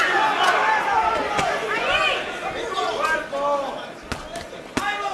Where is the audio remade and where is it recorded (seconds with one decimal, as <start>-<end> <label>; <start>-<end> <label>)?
0.0-0.6 remade; 0.6-1.3 recorded; 1.3-2.0 remade; 2.0-5.1 recorded